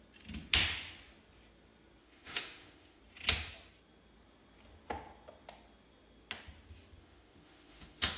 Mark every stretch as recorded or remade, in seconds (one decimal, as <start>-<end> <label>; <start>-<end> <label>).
0.0-2.0 recorded; 2.0-3.0 remade; 3.0-7.0 recorded; 7.0-8.2 remade